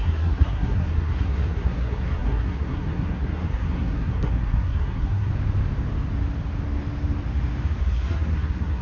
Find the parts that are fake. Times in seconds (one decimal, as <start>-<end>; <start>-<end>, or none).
0.0-5.3; 7.8-8.8